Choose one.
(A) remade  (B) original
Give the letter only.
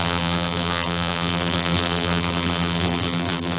A